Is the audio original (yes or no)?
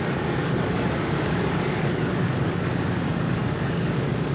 no